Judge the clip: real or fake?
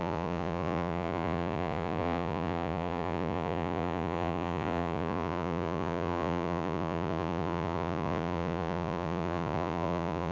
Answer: fake